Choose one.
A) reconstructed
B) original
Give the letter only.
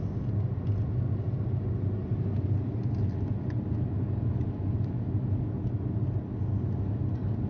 B